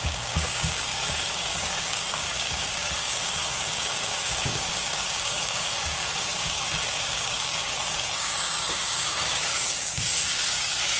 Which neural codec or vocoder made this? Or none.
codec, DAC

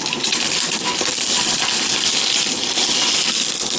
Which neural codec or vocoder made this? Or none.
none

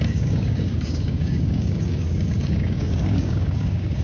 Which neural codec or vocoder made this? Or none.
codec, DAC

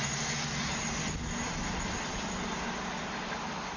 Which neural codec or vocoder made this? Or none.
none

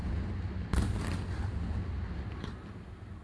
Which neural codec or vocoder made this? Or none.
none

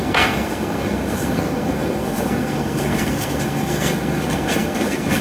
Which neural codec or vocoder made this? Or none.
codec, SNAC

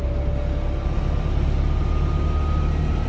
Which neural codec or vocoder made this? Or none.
none